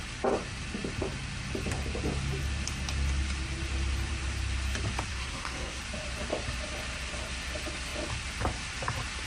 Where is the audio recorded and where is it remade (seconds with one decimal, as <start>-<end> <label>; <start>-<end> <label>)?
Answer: 0.0-5.1 recorded; 5.1-5.8 remade; 5.8-9.3 recorded